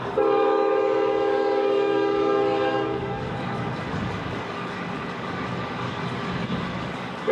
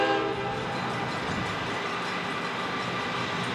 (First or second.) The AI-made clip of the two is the first